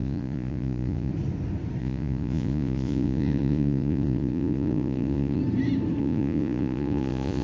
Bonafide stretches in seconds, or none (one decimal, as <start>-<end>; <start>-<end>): 1.1-1.8; 5.4-6.0